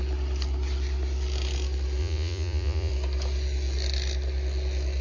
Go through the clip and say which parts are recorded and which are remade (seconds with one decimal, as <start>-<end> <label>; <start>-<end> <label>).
0.0-2.0 recorded; 2.0-2.9 remade; 2.9-5.0 recorded